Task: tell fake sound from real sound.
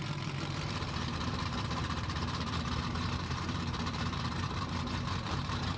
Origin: fake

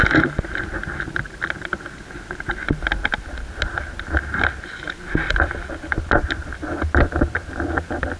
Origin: real